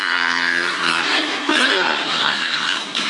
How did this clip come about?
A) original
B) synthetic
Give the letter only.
B